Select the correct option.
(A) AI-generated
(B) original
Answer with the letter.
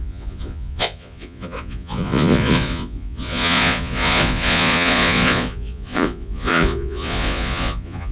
A